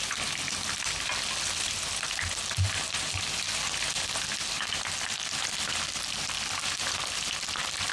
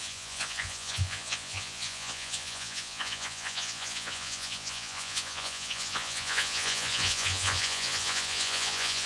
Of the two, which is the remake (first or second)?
second